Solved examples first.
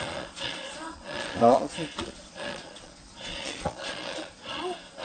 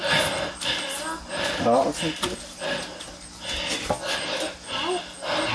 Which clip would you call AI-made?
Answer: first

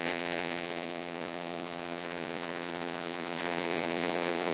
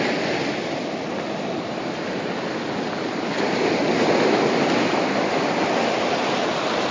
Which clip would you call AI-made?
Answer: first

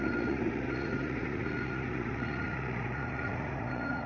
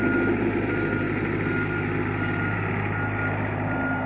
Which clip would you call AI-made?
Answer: first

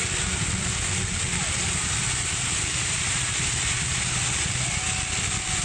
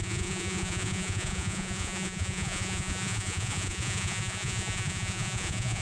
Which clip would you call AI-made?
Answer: second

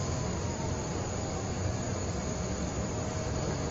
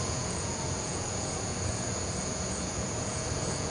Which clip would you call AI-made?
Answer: second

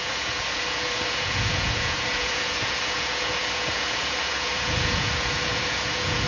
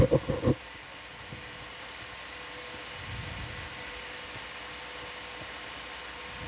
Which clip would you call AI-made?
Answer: first